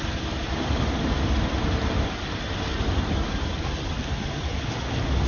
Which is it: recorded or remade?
recorded